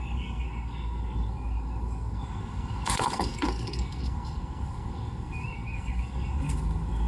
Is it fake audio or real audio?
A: fake